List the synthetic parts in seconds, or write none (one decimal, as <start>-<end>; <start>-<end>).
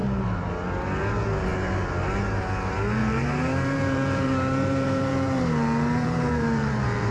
0.0-0.5; 3.0-7.1